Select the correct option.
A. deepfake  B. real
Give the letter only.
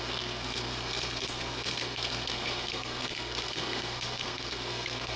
A